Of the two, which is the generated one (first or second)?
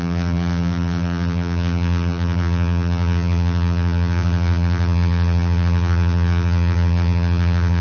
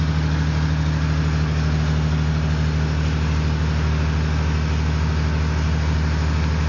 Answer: first